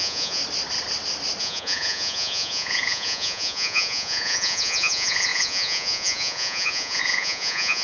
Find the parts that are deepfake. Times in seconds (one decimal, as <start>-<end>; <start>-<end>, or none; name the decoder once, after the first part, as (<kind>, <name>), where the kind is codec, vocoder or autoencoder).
0.0-0.4 (vocoder, Vocos); 1.4-7.8